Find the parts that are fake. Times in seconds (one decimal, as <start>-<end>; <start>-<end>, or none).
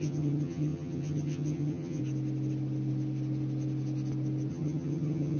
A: 0.0-2.0; 4.5-5.4